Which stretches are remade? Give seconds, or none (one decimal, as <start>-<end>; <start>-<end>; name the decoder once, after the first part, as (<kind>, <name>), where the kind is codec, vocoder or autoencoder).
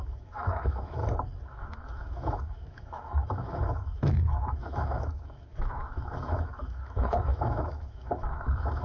0.0-1.0 (autoencoder, DAC-VAE); 1.5-8.8